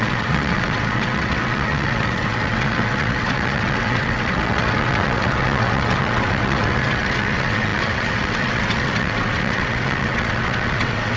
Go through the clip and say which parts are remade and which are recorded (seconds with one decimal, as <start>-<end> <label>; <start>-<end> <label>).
0.0-11.2 remade